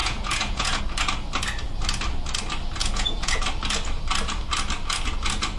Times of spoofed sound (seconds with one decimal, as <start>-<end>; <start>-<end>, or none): 0.0-0.8; 2.8-3.4